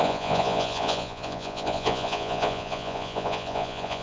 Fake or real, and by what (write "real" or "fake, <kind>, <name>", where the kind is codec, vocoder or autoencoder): fake, vocoder, Vocos